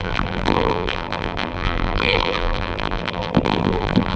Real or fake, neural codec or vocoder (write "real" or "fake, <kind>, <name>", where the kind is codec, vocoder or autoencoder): fake, vocoder, BigVGAN v2